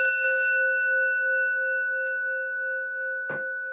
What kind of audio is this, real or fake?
real